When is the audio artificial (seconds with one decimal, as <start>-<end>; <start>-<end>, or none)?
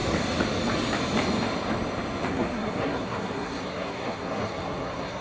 2.3-5.2